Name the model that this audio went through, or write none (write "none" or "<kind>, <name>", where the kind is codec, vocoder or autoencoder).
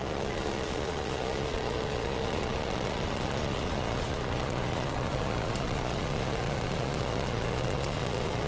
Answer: vocoder, Vocos